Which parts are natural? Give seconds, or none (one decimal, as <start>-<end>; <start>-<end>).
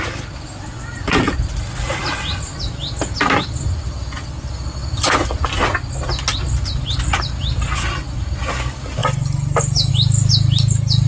0.0-11.1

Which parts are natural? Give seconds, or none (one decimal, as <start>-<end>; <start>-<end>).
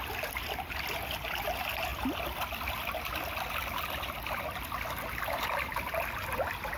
0.0-6.8